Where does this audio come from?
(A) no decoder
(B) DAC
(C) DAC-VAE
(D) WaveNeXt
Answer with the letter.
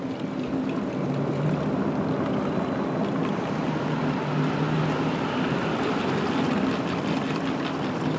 A